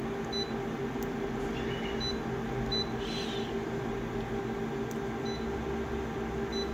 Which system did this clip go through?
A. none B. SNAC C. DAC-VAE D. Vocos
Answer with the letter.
A